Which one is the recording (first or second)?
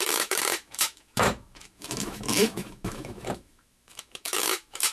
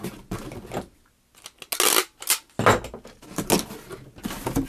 second